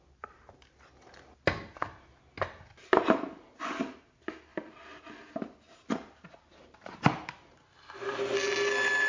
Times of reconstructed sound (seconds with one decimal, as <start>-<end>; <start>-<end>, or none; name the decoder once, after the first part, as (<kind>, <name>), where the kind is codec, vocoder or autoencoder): none